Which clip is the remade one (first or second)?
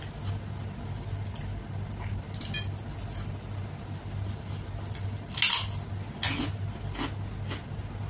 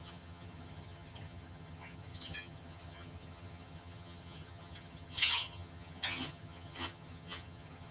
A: second